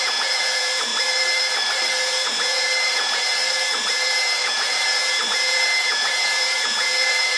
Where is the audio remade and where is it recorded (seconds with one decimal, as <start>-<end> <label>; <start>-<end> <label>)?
0.0-0.9 remade; 0.9-1.9 recorded; 1.9-7.4 remade